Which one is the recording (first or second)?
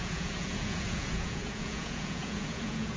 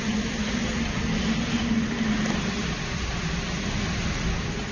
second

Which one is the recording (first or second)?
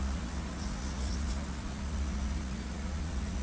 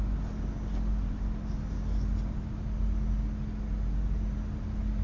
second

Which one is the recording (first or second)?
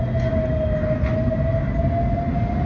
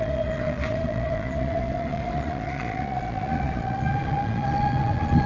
first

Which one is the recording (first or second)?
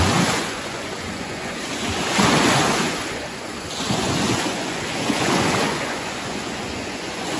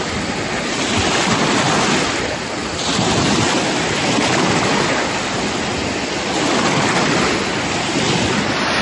second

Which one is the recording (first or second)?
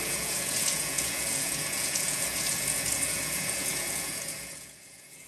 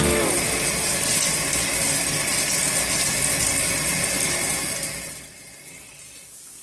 second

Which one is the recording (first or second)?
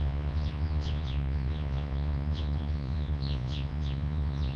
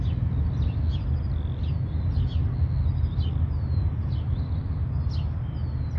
second